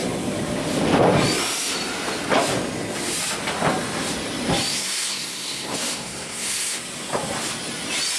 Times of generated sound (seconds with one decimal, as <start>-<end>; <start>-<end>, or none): 4.7-6.8